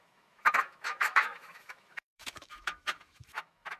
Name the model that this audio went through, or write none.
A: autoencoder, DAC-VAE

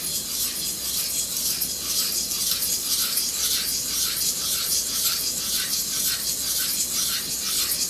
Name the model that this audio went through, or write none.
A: none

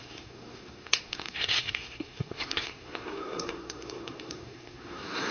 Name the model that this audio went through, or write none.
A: codec, SNAC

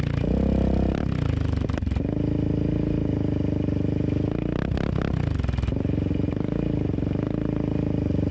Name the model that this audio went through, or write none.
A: none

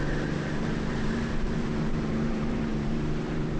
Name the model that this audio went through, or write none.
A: vocoder, BigVGAN v2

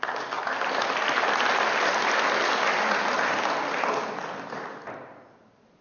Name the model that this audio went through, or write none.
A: none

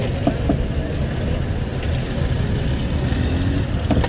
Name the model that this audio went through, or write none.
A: none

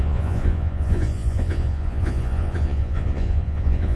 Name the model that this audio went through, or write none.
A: vocoder, Vocos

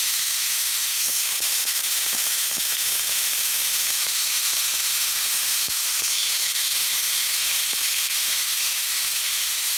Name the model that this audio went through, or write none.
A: autoencoder, DAC-VAE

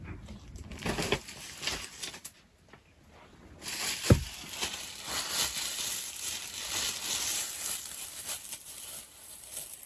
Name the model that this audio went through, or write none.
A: none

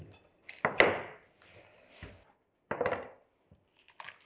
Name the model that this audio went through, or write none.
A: none